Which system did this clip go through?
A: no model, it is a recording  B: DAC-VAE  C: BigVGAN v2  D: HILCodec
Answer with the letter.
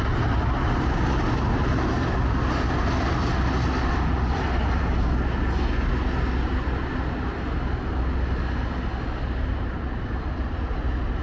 A